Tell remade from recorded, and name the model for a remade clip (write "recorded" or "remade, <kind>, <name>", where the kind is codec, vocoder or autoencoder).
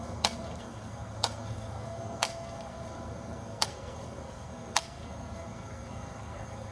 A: remade, codec, SNAC